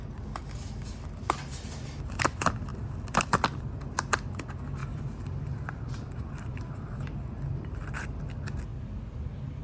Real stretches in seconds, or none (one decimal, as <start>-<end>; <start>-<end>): 0.0-4.8; 8.2-9.6